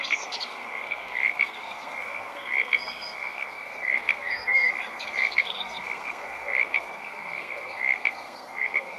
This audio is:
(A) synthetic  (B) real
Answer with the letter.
A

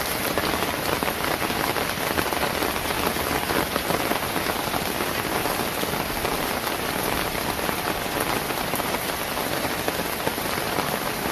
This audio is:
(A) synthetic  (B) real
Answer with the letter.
B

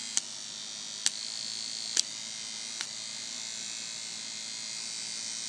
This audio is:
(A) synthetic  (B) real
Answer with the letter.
B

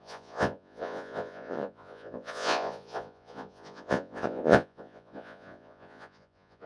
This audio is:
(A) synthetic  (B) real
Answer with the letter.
A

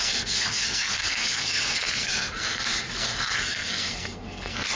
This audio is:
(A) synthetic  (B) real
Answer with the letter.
A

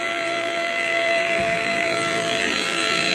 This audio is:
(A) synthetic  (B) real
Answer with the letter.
A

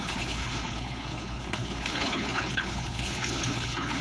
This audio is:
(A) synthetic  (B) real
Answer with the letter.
A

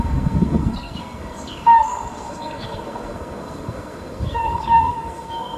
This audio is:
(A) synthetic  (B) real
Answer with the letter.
A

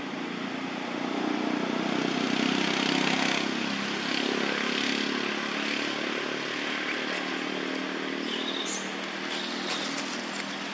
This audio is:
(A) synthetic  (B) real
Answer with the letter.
B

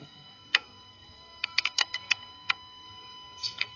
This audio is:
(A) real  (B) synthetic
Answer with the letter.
B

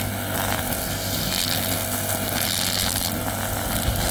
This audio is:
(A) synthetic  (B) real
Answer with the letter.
B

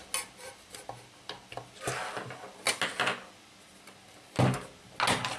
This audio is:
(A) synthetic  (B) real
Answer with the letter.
B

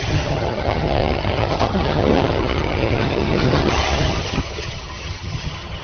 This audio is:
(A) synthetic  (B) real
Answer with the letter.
A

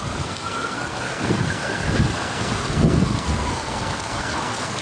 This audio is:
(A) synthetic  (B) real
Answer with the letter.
A